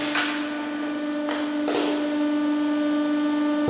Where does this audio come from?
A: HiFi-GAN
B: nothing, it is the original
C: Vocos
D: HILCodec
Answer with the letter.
B